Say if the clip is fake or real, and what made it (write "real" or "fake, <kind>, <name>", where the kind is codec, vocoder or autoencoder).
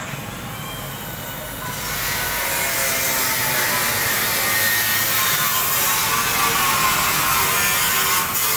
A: real